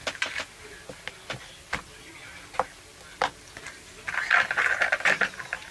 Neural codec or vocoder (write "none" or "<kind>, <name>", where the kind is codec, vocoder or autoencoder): none